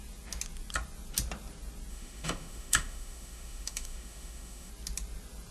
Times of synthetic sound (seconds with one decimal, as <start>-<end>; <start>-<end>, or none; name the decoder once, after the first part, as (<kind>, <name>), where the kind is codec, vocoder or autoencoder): 1.9-4.7 (autoencoder, DAC-VAE)